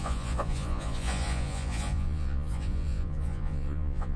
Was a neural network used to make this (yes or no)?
yes